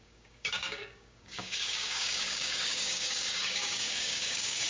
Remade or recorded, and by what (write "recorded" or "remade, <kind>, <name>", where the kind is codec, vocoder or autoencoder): remade, codec, DAC